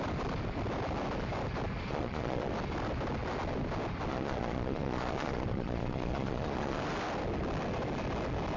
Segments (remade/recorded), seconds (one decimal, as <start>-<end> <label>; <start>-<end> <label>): 0.0-1.9 recorded; 1.9-2.5 remade; 2.5-4.1 recorded; 4.1-6.8 remade; 6.8-8.6 recorded